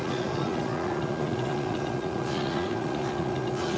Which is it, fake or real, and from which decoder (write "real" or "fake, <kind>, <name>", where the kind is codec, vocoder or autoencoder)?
fake, vocoder, Vocos